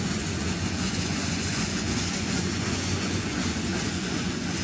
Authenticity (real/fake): fake